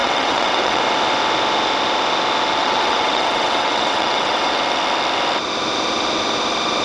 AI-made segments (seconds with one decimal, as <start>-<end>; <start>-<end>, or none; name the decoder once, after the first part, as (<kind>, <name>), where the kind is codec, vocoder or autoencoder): 0.0-0.8 (vocoder, WaveNeXt); 2.6-4.5